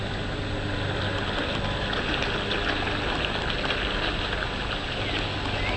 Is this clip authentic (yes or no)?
yes